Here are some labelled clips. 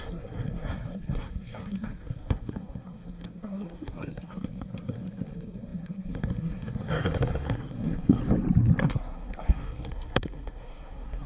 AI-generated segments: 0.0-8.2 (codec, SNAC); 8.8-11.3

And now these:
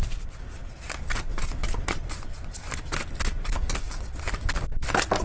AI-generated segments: none

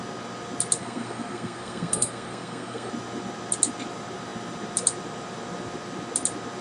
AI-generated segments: 0.8-2.9 (codec, SNAC)

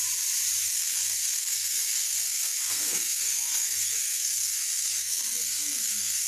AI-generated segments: 0.6-6.3 (codec, SNAC)

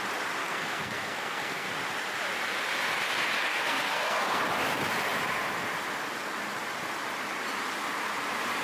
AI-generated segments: 0.4-1.7 (codec, SNAC); 3.5-4.4